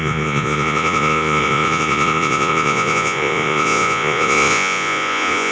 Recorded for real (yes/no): no